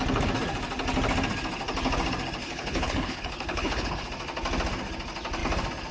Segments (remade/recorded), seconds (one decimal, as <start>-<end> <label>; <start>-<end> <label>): 0.0-2.4 recorded; 2.4-4.1 remade; 4.1-5.9 recorded